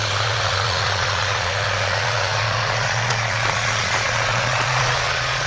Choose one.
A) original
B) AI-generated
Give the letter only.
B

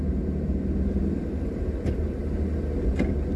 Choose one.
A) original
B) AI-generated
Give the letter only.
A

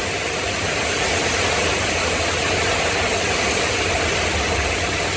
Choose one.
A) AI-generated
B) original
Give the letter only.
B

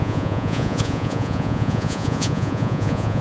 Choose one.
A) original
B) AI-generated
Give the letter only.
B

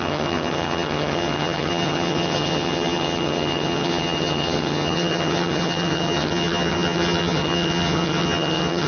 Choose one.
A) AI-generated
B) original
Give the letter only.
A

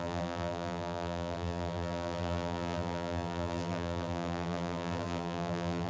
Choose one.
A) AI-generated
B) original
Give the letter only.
A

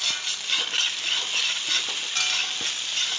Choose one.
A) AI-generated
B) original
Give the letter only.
B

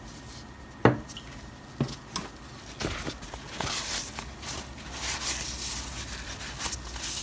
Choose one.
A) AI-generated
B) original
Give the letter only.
B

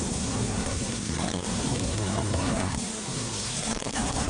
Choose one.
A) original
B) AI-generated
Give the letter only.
B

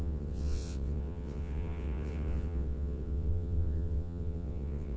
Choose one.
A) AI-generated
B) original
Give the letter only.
A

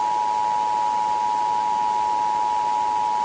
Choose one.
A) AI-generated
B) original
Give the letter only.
B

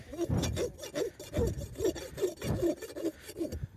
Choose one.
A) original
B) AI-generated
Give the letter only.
A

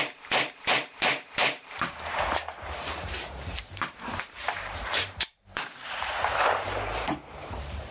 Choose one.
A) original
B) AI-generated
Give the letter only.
B